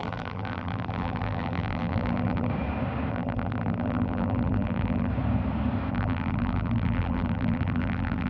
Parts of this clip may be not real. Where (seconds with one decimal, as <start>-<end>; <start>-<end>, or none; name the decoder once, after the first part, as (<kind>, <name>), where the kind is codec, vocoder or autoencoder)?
0.0-2.5 (vocoder, BigVGAN v2); 3.1-5.1; 5.9-8.3